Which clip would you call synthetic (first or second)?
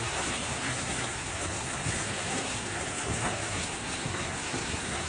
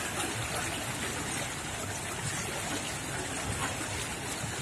first